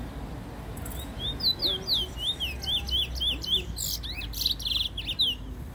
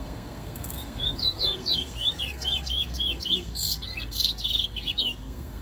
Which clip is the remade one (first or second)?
second